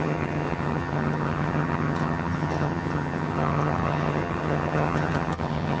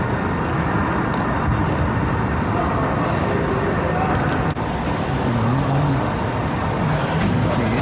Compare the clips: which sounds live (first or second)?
second